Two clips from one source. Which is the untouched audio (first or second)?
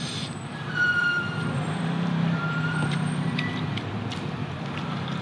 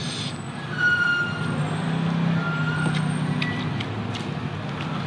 second